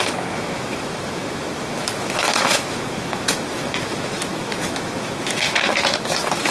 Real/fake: fake